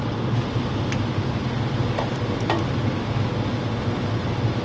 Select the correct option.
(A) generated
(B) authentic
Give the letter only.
B